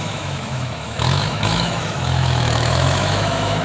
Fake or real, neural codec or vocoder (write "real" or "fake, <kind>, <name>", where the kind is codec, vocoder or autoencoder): fake, autoencoder, DAC-VAE